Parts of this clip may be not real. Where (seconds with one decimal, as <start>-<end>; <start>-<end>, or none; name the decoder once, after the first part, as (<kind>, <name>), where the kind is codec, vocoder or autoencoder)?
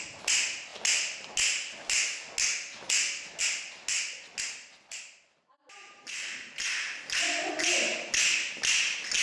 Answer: none